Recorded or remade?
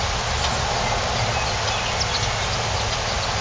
recorded